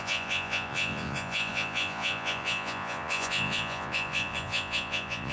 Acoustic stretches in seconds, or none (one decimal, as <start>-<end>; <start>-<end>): none